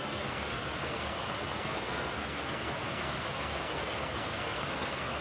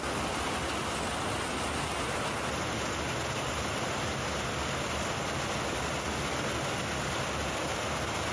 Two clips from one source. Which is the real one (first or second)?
second